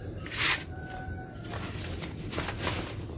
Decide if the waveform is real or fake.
real